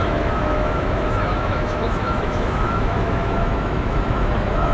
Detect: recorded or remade remade